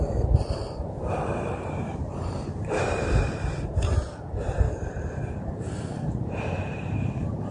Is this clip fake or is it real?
fake